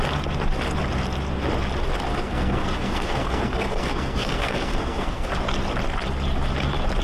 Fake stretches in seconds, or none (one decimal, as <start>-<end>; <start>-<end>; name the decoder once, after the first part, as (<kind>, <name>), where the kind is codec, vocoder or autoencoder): 2.1-5.3 (codec, SNAC)